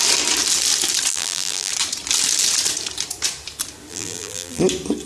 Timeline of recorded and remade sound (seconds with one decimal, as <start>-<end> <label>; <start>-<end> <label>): 0.0-1.1 recorded; 1.1-1.7 remade; 1.7-3.9 recorded; 3.9-4.6 remade; 4.6-5.1 recorded